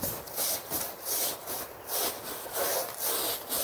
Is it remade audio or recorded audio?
remade